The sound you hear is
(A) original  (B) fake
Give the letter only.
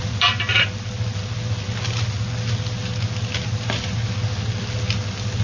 A